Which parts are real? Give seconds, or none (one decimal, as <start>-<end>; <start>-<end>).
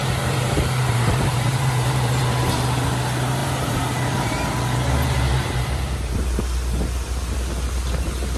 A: 2.2-3.4; 6.4-8.4